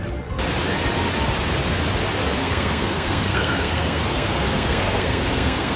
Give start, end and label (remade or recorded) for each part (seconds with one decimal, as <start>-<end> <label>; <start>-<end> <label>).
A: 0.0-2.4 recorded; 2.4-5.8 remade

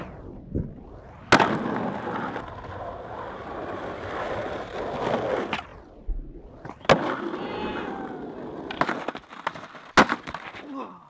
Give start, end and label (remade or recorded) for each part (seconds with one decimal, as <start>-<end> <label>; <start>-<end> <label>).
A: 0.0-3.4 recorded; 3.4-4.7 remade; 4.7-11.1 recorded

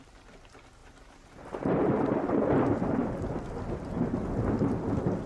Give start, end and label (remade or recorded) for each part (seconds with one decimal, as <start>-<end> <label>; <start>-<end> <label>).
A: 0.0-0.8 recorded; 0.8-2.1 remade; 2.1-5.3 recorded